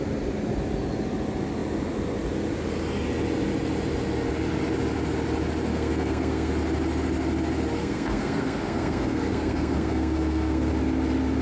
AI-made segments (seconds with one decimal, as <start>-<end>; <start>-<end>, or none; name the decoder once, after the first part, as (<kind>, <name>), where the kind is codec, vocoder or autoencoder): 5.7-6.5 (codec, SNAC); 7.8-10.7